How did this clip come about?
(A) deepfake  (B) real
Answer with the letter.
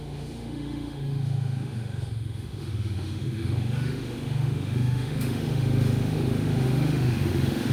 A